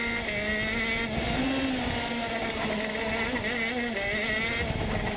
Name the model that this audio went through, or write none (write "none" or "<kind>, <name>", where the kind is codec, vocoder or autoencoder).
none